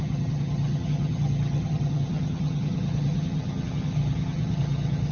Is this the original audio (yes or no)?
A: no